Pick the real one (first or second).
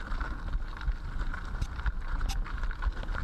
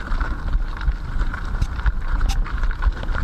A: first